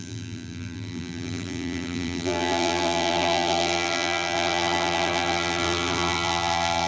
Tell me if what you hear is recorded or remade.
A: remade